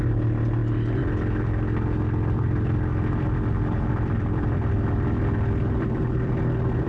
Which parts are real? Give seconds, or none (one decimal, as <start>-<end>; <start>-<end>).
0.6-3.9